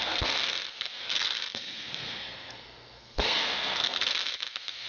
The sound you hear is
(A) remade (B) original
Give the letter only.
A